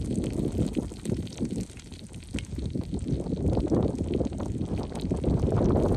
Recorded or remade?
recorded